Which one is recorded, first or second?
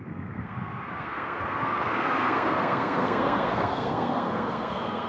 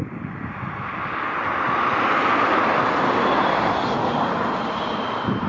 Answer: second